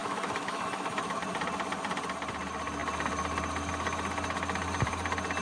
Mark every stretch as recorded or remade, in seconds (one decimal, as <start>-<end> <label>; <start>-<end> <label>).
0.0-1.1 remade; 1.1-5.4 recorded